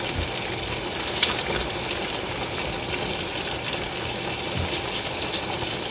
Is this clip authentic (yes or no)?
yes